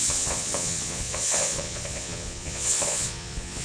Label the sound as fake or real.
fake